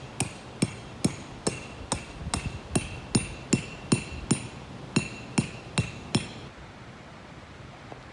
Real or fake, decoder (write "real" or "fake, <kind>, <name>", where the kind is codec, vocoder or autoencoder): real